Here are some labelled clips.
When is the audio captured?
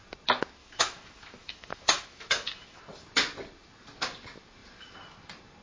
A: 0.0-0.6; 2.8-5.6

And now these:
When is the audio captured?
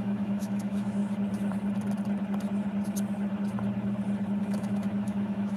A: 1.0-4.4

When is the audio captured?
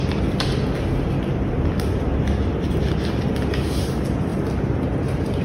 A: 0.0-5.4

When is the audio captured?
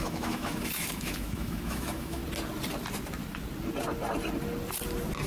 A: 2.2-5.3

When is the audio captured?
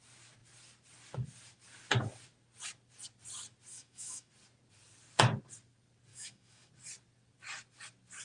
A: 0.0-3.7; 4.3-6.1; 6.7-8.2